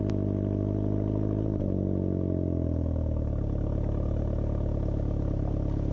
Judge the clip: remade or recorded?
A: recorded